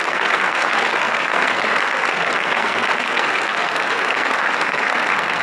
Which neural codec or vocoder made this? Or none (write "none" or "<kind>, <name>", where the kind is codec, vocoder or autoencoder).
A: codec, SNAC